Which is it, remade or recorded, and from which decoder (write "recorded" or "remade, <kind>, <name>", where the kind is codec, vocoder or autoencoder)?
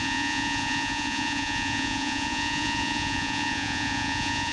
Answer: remade, vocoder, Vocos